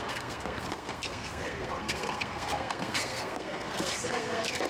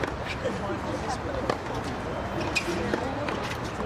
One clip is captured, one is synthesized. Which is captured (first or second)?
second